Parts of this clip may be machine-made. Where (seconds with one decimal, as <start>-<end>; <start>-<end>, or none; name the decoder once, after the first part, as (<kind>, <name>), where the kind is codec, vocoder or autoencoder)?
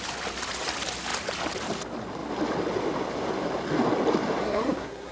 4.4-5.1 (codec, SNAC)